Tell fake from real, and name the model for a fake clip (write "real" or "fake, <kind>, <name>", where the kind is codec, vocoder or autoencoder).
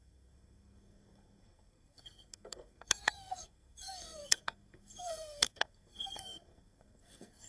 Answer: fake, codec, SNAC